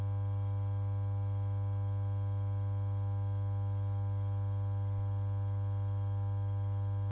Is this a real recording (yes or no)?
yes